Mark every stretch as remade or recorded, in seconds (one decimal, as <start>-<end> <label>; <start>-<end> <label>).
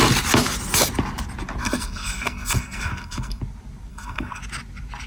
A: 0.0-1.6 recorded; 1.6-3.4 remade; 3.4-3.9 recorded; 3.9-4.4 remade; 4.4-5.1 recorded